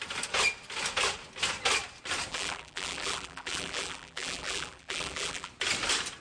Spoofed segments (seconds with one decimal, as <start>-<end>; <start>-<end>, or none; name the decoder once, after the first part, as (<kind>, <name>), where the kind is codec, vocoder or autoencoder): 2.3-5.5 (vocoder, BigVGAN v2)